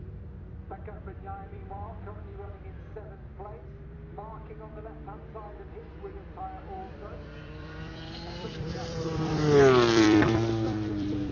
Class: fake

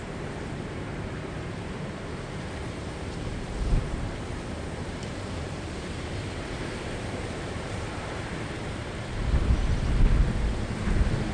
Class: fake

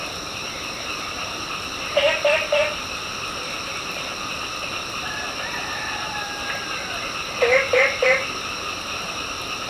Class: fake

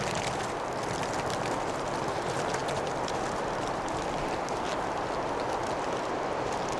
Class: real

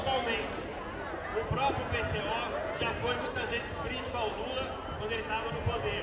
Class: real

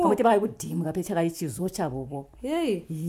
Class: fake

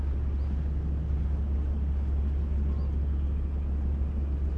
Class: real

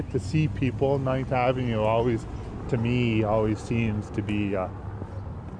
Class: real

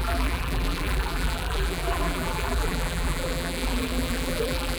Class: fake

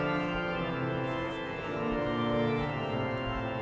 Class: real